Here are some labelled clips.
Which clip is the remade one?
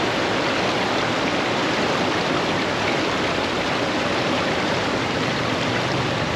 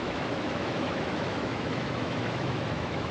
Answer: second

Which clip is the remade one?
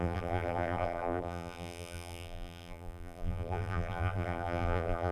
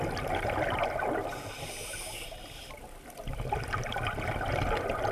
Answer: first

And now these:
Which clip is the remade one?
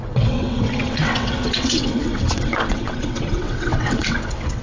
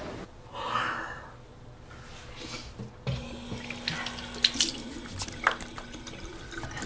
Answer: first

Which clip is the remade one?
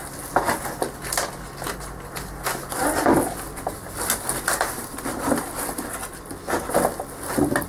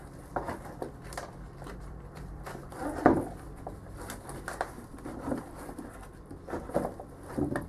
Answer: second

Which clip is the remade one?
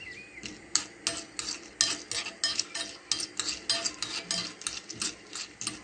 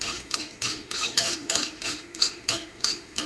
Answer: second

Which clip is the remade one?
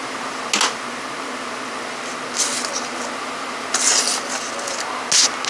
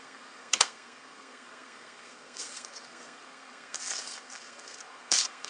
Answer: second